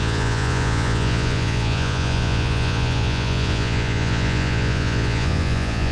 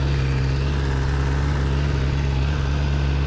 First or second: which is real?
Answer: second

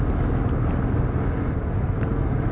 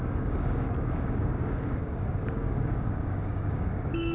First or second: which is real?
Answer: first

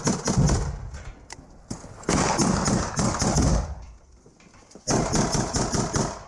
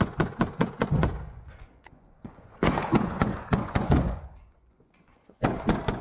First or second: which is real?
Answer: first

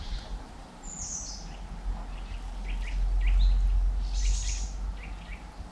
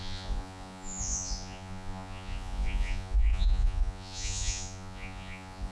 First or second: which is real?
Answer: first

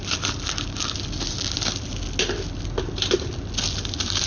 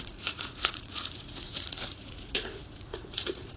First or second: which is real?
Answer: first